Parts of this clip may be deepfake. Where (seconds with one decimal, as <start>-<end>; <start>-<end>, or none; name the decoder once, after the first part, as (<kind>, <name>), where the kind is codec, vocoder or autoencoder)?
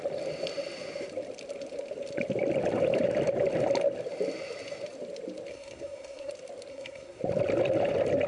5.5-6.3 (codec, SNAC); 6.7-7.2